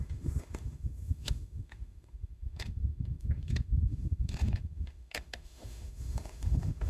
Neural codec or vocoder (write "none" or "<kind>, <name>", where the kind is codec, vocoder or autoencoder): autoencoder, DAC-VAE